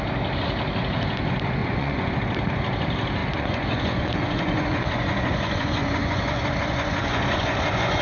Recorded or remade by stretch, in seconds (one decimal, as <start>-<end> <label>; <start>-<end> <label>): 0.0-1.6 recorded; 1.6-2.1 remade; 2.1-3.2 recorded; 3.2-8.0 remade